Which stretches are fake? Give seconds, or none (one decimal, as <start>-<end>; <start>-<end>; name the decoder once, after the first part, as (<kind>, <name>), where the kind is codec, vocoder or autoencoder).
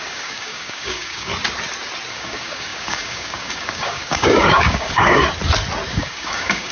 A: 0.0-1.3 (codec, DAC); 2.1-5.2; 5.9-6.7